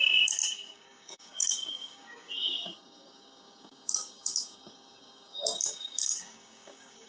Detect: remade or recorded remade